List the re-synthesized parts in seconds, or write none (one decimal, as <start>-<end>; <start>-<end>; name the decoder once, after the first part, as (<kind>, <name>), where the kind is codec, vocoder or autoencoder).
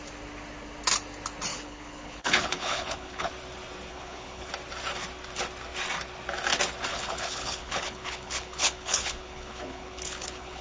1.5-3.3 (codec, HILCodec); 3.9-4.5; 6.9-10.6